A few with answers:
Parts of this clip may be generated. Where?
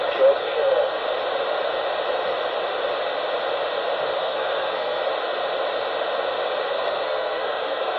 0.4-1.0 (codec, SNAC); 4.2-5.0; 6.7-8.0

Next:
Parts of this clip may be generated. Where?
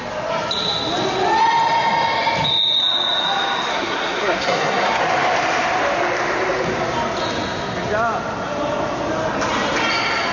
3.7-5.0 (codec, SNAC)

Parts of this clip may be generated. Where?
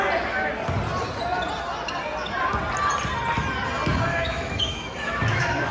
4.1-5.7 (autoencoder, DAC-VAE)